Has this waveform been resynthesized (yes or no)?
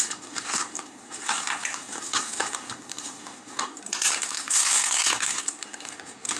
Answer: yes